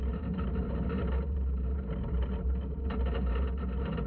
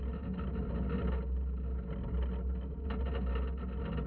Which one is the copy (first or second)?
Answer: first